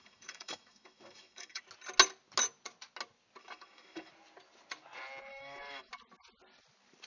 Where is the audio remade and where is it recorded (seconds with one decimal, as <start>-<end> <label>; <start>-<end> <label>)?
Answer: 0.0-1.6 remade; 1.6-3.4 recorded; 3.4-4.1 remade; 4.1-5.3 recorded; 5.3-5.9 remade; 5.9-7.1 recorded